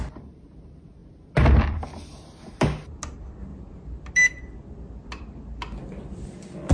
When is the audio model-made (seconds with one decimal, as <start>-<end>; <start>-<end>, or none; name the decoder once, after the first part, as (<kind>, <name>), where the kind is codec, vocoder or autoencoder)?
none